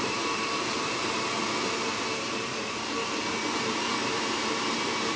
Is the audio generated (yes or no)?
yes